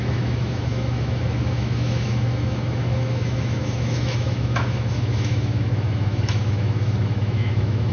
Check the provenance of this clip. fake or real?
fake